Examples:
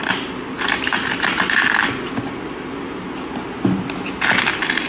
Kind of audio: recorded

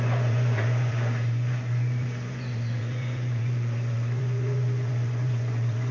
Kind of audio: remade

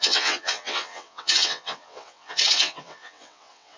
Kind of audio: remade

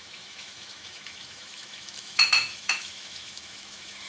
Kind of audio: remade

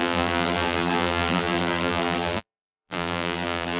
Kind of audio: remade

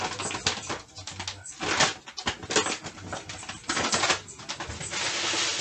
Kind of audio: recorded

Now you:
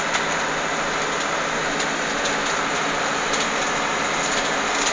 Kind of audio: recorded